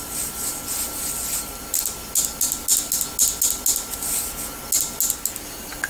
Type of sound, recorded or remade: recorded